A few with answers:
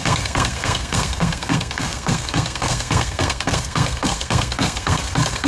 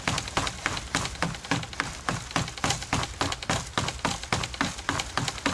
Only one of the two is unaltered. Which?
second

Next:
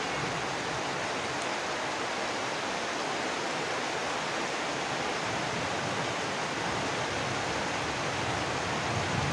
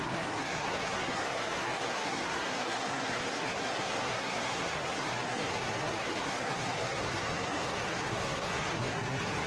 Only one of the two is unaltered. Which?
first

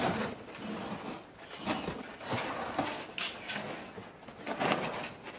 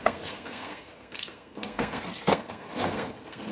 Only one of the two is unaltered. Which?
first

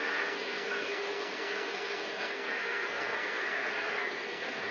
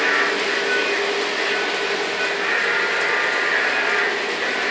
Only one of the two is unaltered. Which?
second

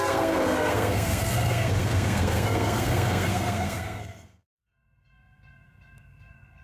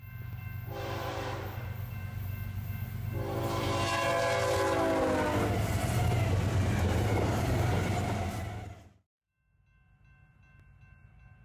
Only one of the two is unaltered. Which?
second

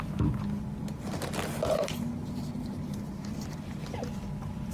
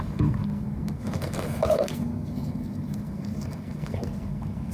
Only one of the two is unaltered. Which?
first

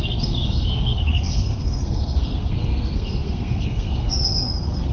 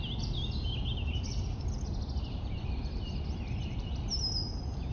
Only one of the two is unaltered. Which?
second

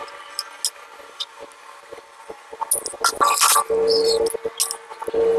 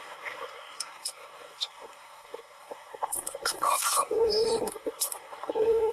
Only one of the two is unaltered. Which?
first